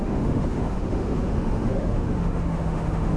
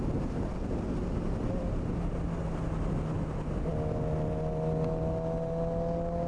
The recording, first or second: second